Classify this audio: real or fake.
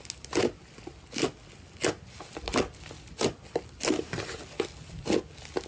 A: real